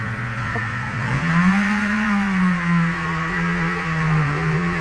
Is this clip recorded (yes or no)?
no